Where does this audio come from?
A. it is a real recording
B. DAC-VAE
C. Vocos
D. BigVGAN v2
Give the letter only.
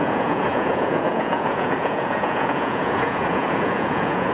C